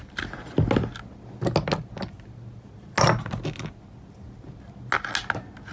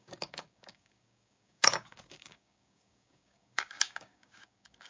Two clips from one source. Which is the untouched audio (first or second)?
first